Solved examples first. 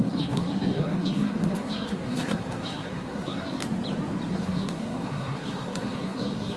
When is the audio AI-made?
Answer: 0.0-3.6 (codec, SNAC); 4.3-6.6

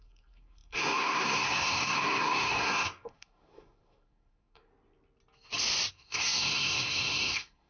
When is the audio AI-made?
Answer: 0.0-4.7 (codec, SNAC); 5.9-7.7